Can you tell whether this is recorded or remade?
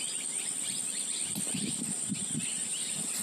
recorded